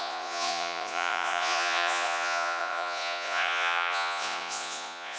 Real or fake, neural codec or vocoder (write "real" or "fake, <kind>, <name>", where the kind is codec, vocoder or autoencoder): fake, vocoder, Vocos